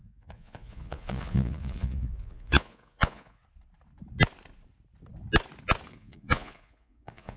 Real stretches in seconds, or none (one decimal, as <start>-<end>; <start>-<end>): 3.4-5.9